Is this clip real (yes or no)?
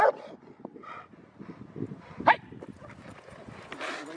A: yes